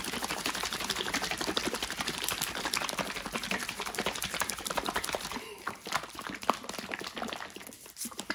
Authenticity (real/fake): real